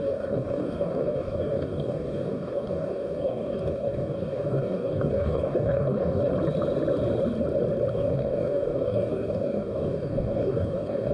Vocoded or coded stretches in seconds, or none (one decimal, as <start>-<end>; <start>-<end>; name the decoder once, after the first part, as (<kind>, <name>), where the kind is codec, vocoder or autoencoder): 0.0-6.3 (codec, DAC); 7.9-11.1